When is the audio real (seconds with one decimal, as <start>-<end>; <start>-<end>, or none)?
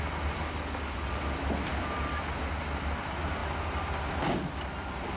0.0-1.7; 2.4-5.2